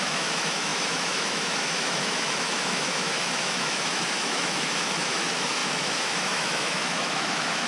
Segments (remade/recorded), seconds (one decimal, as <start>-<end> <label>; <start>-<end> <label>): 0.0-7.7 remade